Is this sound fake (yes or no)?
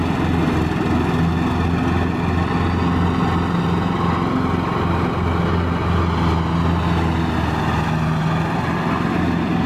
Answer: no